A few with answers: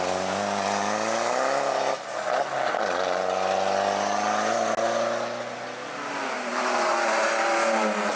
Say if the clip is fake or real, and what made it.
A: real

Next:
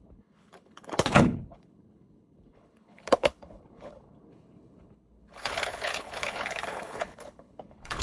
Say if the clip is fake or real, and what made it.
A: fake, codec, HILCodec